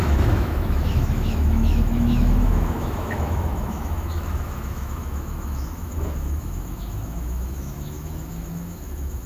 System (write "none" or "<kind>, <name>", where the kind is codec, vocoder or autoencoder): autoencoder, DAC-VAE